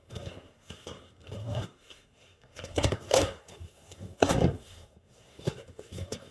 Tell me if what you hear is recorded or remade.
remade